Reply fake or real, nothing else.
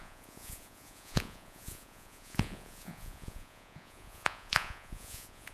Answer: fake